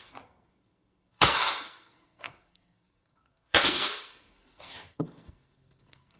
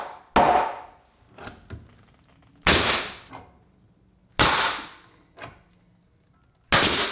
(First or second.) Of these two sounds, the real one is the second